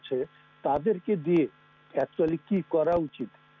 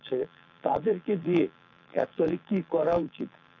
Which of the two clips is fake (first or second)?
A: second